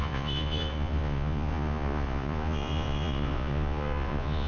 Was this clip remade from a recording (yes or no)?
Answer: yes